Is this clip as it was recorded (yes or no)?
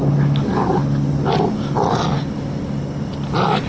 yes